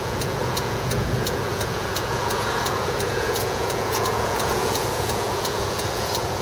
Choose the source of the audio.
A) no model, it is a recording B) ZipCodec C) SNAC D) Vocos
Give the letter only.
D